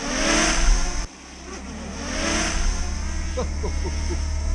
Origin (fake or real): real